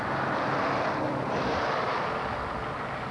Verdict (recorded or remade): recorded